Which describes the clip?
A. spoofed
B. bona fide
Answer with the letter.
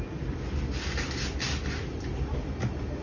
B